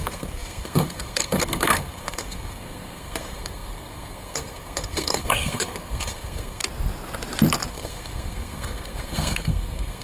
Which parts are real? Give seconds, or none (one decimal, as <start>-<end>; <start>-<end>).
6.6-7.7